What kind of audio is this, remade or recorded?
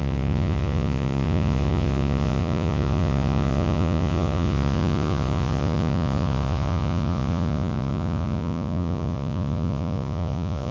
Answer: remade